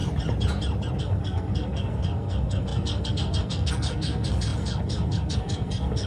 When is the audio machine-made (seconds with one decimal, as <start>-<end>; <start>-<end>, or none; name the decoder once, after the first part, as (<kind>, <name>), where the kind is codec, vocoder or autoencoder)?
1.0-6.1 (codec, SNAC)